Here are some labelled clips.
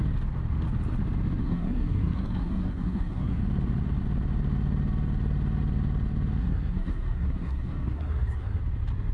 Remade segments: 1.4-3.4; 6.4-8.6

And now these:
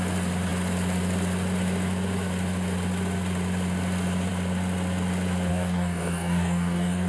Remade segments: 5.5-7.1

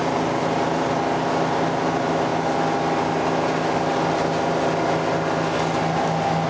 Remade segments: none

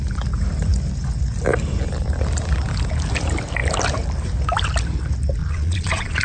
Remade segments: 5.4-6.2

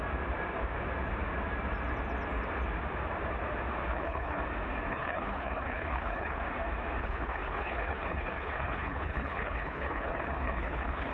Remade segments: 3.9-4.4; 4.9-6.4; 7.0-11.1

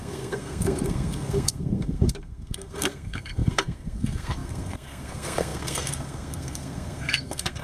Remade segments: 0.0-7.6

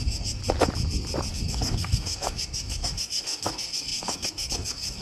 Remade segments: 0.0-0.4; 1.3-5.0

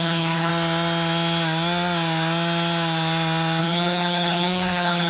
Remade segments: 0.0-0.5; 3.6-5.1